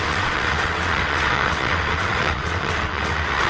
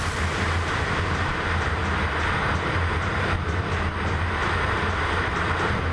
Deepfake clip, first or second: first